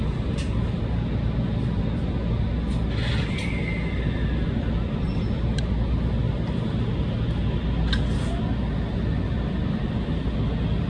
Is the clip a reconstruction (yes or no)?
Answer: no